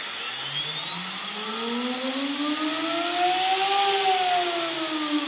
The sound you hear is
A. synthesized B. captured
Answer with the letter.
B